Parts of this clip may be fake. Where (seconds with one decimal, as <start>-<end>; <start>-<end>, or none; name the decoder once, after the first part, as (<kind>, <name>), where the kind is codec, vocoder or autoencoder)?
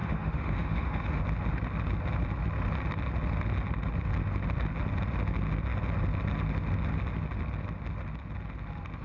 0.0-1.2 (autoencoder, DAC-VAE)